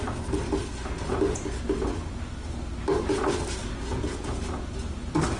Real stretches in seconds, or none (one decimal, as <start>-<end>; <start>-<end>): 0.0-3.6; 4.4-5.4